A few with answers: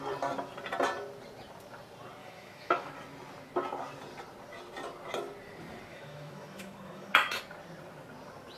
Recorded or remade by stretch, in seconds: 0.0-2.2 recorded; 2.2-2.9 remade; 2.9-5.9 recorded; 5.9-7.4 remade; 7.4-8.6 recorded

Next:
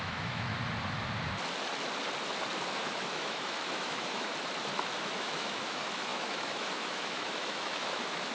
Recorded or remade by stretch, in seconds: 0.0-0.5 remade; 0.5-2.7 recorded; 2.7-4.3 remade; 4.3-5.2 recorded; 5.2-8.3 remade